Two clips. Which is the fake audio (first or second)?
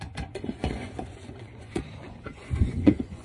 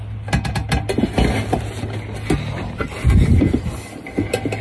first